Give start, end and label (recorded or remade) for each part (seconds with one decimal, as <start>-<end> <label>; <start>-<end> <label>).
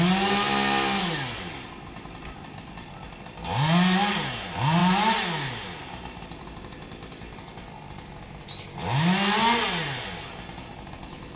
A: 0.0-11.4 recorded